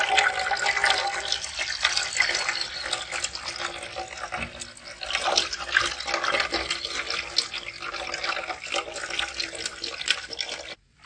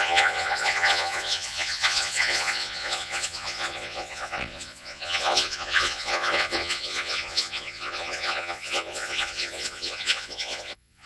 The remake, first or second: second